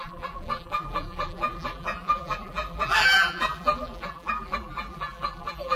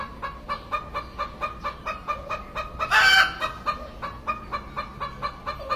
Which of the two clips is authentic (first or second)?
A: second